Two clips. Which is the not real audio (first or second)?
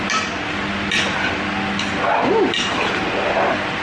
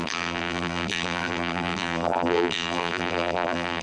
second